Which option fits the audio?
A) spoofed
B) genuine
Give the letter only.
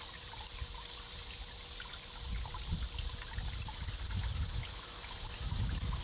B